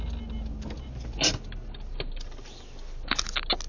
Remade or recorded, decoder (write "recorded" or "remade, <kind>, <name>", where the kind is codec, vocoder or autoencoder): recorded